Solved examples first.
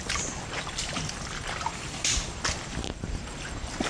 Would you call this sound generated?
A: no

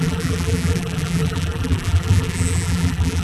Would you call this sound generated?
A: yes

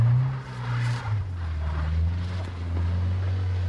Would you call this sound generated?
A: no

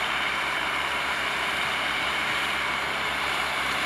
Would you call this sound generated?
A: yes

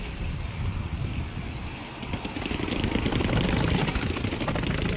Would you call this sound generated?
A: yes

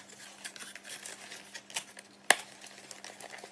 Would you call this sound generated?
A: no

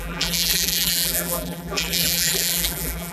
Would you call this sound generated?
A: yes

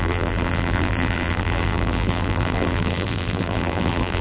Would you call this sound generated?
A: yes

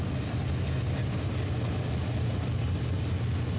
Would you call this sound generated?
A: no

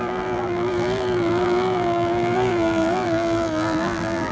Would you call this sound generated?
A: yes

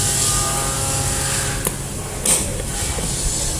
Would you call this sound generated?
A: no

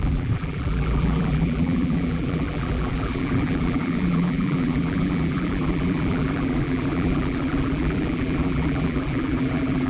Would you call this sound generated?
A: yes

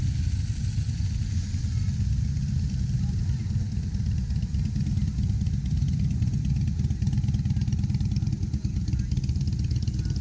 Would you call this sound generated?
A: no